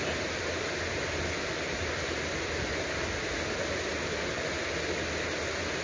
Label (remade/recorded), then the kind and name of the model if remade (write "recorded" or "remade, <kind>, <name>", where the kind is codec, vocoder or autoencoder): recorded